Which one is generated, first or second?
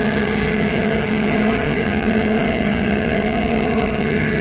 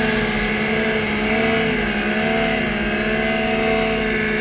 first